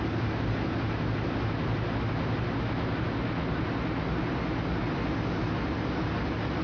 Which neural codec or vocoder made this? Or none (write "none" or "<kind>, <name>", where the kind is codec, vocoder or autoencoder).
none